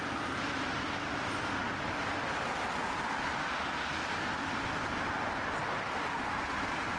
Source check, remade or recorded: recorded